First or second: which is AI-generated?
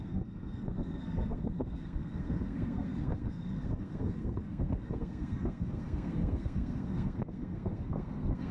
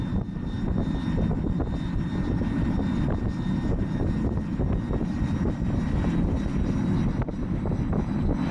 first